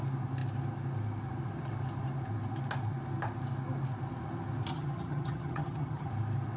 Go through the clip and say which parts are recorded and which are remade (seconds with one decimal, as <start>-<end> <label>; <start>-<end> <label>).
0.0-4.7 recorded; 4.7-6.1 remade; 6.1-6.6 recorded